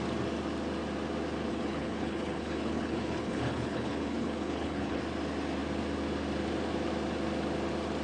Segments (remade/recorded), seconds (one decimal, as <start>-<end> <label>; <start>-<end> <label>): 0.0-1.5 recorded; 1.5-5.0 remade; 5.0-8.0 recorded